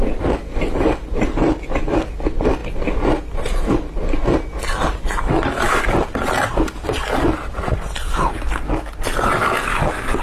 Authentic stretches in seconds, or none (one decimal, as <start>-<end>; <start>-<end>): 0.0-10.2